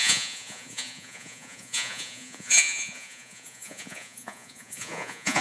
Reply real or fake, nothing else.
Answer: fake